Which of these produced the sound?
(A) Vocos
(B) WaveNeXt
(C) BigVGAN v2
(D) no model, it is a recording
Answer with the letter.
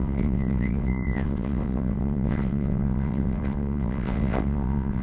B